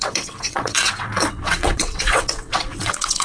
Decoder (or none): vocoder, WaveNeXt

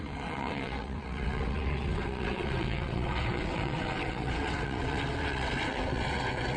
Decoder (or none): vocoder, WaveNeXt